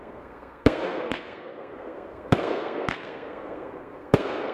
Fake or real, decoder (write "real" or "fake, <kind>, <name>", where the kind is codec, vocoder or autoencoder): fake, codec, SNAC